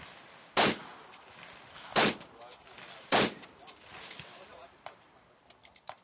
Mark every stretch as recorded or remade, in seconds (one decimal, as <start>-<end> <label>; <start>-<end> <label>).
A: 0.0-2.7 recorded; 2.7-5.3 remade; 5.3-6.0 recorded